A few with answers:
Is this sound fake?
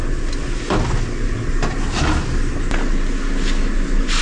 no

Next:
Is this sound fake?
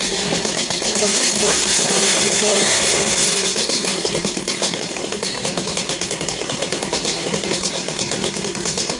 yes